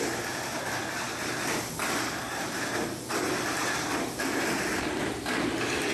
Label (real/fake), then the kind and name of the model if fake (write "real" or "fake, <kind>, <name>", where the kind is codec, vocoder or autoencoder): real